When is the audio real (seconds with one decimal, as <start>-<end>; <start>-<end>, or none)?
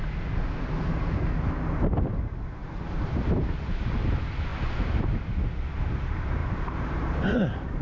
0.0-6.4